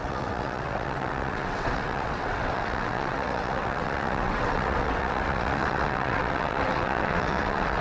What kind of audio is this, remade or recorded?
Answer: remade